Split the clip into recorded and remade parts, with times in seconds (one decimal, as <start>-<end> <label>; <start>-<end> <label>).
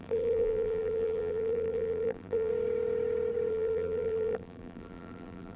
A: 0.0-2.5 remade; 2.5-3.5 recorded; 3.5-5.6 remade